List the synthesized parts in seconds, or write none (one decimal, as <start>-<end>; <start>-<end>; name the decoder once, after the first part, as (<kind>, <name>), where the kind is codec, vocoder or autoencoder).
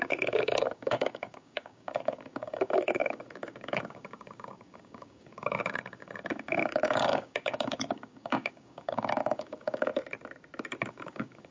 0.0-9.9 (codec, DAC); 10.9-11.5